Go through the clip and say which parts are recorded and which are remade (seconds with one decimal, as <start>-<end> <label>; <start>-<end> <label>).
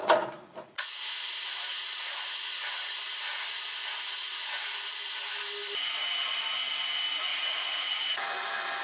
0.0-5.2 remade; 5.2-7.3 recorded; 7.3-8.2 remade; 8.2-8.8 recorded